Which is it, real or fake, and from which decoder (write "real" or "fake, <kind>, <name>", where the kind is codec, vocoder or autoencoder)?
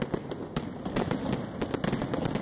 real